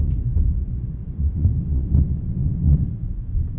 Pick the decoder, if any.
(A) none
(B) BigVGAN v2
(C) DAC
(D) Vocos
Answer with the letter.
D